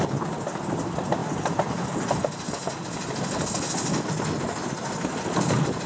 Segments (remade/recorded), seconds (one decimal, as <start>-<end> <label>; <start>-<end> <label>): 0.0-5.9 recorded